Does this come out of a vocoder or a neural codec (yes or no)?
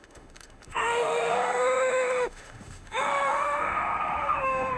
yes